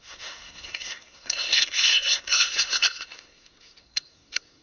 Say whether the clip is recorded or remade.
remade